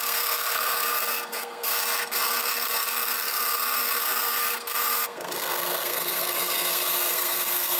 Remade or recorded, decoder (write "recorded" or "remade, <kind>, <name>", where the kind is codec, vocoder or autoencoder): remade, codec, SNAC